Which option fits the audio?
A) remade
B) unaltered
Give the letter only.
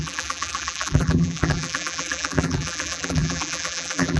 A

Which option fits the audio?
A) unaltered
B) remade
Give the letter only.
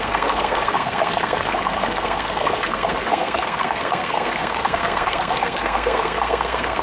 B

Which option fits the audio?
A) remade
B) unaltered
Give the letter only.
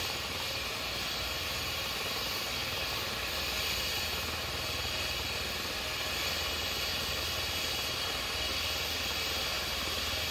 B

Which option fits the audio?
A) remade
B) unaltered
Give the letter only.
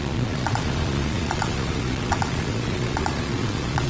A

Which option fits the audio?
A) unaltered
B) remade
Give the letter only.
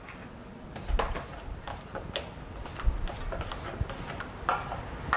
A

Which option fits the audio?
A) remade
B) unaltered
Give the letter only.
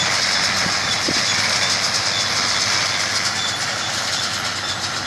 B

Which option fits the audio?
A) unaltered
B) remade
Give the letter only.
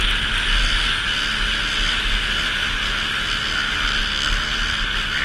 A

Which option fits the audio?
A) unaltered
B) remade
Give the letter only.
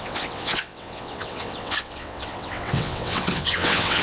B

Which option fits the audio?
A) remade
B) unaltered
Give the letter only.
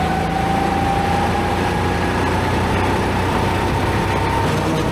B